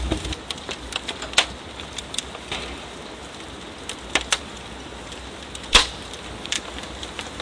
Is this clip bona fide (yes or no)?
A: yes